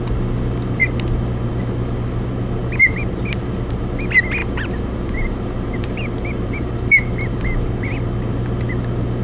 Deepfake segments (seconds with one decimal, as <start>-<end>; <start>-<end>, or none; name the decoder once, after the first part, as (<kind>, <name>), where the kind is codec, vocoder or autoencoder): 2.6-3.2 (vocoder, BigVGAN v2); 4.4-7.9

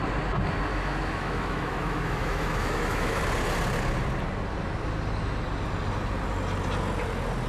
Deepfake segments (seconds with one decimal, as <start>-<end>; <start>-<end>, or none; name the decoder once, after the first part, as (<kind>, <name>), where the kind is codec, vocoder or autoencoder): 0.7-3.2 (autoencoder, DAC-VAE)

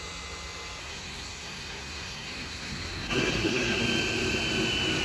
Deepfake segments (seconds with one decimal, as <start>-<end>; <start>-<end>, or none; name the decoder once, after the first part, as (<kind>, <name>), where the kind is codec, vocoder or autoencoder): 0.8-3.8 (codec, SNAC)

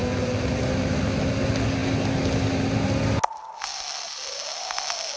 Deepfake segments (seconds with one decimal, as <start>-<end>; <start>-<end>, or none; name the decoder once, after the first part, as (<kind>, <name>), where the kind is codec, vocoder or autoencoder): 0.0-1.0 (vocoder, BigVGAN v2)